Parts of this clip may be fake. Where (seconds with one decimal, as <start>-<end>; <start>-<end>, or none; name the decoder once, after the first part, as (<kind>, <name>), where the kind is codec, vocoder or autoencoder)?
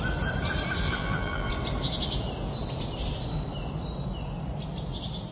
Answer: 0.8-1.5 (vocoder, BigVGAN v2)